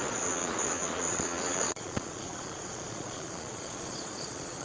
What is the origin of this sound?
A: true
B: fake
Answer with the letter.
B